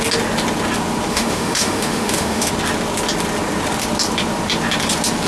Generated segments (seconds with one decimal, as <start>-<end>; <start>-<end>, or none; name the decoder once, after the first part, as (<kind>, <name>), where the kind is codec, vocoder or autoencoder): 1.1-2.5 (autoencoder, DAC-VAE)